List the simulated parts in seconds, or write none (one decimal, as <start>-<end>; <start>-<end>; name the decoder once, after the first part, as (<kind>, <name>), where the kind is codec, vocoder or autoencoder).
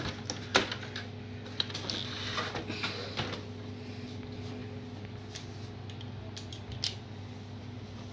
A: none